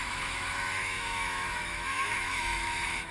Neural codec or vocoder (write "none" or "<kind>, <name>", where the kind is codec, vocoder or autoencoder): autoencoder, DAC-VAE